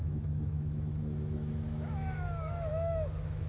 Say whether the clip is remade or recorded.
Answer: remade